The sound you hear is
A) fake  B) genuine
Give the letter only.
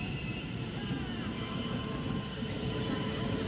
A